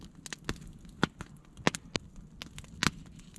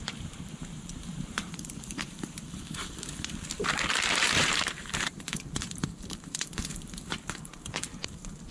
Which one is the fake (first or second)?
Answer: second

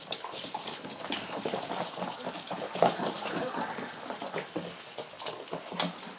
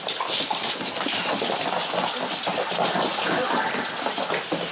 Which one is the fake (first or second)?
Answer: first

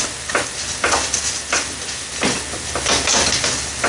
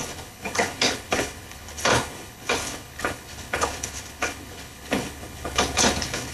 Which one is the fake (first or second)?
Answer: second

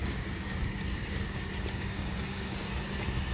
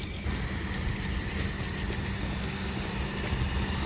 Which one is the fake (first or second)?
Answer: first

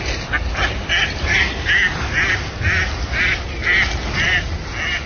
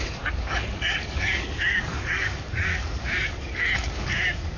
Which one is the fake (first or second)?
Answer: second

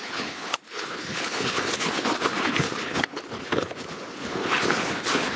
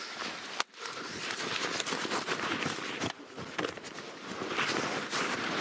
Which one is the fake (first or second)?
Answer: first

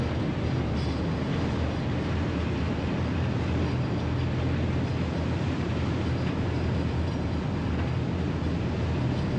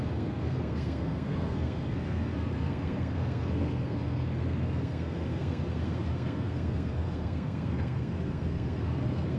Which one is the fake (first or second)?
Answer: second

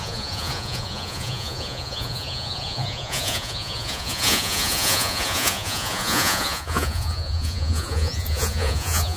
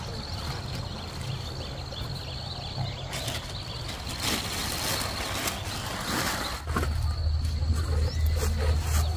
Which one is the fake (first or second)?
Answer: first